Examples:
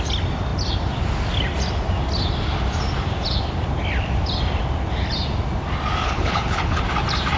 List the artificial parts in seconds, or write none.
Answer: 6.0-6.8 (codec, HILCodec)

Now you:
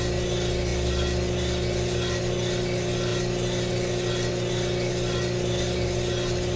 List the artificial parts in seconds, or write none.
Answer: none

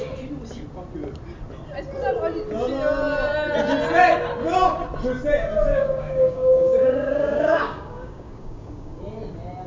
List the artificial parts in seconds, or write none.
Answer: 5.7-9.0 (codec, DAC)

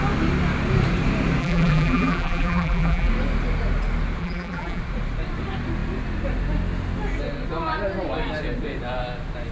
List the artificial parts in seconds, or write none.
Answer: 1.4-3.1 (vocoder, BigVGAN v2); 4.2-4.8

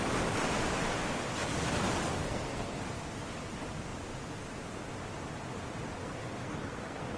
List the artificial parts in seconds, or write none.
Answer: 2.2-2.8 (codec, SNAC); 6.0-7.2